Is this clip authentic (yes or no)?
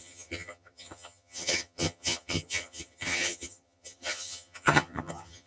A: no